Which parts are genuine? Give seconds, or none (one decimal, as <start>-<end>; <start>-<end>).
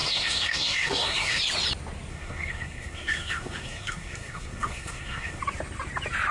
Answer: 1.4-2.1; 5.4-6.3